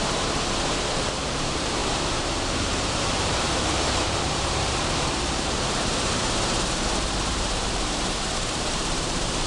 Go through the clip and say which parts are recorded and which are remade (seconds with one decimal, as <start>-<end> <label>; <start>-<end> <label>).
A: 0.0-9.5 remade